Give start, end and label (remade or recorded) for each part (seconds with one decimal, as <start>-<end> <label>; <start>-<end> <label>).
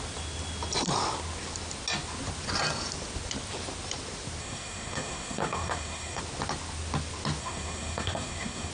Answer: 0.0-4.4 recorded; 4.4-6.2 remade; 6.2-7.4 recorded; 7.4-8.7 remade